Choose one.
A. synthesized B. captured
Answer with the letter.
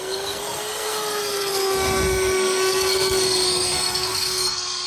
A